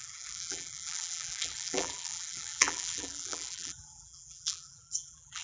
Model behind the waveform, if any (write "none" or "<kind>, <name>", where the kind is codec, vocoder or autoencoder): vocoder, BigVGAN v2